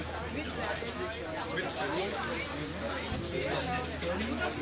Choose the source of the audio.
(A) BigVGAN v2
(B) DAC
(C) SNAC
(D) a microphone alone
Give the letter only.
D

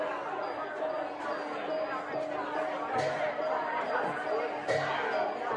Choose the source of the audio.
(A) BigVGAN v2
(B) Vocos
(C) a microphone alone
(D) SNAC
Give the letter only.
C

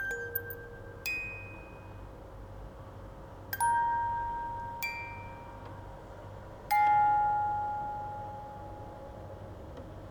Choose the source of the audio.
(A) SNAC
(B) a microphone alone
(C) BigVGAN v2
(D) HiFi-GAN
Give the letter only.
B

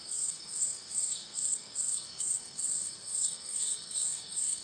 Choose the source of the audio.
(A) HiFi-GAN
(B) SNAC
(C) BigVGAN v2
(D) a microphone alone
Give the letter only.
B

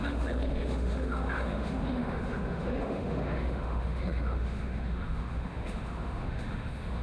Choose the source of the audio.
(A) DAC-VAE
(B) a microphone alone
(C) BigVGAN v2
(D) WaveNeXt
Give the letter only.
A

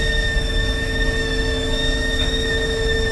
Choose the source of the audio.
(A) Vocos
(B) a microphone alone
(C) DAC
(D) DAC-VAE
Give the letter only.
D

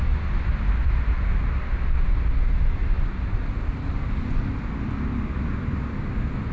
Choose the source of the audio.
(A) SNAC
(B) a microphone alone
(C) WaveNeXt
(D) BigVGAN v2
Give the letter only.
B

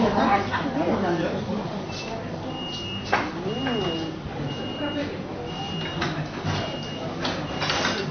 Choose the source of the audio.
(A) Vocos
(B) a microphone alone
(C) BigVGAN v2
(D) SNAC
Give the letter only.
B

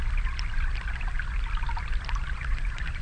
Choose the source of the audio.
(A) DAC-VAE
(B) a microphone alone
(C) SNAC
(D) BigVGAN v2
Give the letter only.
B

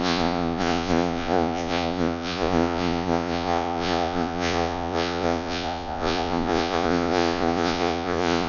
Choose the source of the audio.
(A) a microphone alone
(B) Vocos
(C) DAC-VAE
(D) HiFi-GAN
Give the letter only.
B